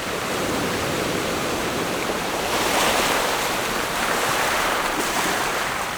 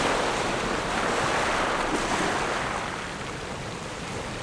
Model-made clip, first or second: first